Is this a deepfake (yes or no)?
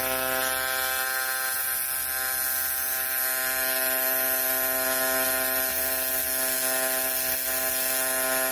no